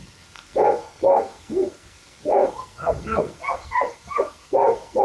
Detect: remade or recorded remade